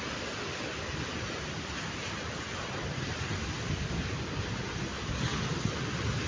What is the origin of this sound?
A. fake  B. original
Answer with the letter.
B